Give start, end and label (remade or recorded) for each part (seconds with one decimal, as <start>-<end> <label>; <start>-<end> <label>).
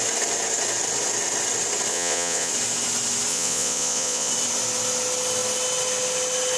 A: 0.0-1.9 recorded; 1.9-2.5 remade; 2.5-3.3 recorded; 3.3-4.3 remade; 4.3-6.6 recorded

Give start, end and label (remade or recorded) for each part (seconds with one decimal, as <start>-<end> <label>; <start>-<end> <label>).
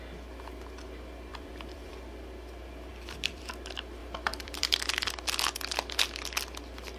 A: 0.0-1.3 recorded; 1.3-1.9 remade; 1.9-2.9 recorded; 2.9-3.5 remade; 3.5-4.0 recorded; 4.0-4.9 remade; 4.9-7.0 recorded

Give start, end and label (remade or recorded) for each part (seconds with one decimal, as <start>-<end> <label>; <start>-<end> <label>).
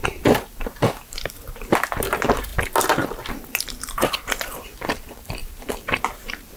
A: 0.0-2.5 remade; 2.5-3.3 recorded; 3.3-6.6 remade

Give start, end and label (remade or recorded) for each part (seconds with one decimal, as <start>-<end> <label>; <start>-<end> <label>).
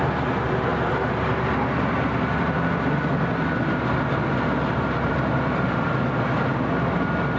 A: 0.0-7.4 recorded